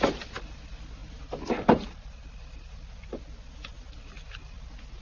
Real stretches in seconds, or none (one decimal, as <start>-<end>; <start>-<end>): 0.0-5.0